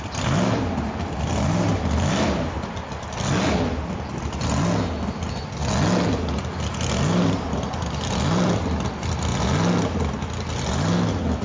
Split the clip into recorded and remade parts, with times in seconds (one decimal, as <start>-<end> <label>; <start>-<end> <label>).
0.0-3.3 remade; 3.3-4.1 recorded; 4.1-5.6 remade; 5.6-7.7 recorded; 7.7-9.3 remade; 9.3-11.4 recorded